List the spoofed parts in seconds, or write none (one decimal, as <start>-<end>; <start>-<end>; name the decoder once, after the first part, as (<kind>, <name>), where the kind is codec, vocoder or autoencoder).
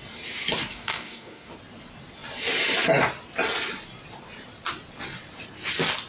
0.7-1.5 (codec, DAC)